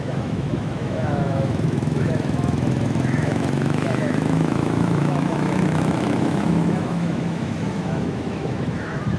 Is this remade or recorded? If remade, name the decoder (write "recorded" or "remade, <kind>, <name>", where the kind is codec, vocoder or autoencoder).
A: remade, autoencoder, DAC-VAE